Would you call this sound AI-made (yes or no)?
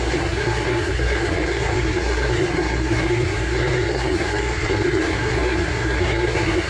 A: yes